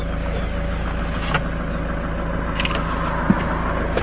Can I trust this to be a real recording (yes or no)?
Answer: yes